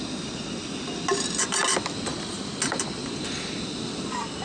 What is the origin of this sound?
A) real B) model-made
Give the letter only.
A